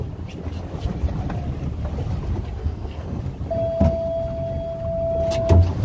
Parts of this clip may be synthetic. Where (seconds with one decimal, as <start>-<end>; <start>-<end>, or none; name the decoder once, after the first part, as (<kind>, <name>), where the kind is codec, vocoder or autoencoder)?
2.6-3.2 (codec, SNAC)